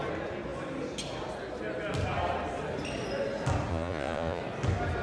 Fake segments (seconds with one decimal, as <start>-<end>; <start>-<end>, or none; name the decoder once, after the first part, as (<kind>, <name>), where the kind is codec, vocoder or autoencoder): 3.7-4.4 (vocoder, Vocos)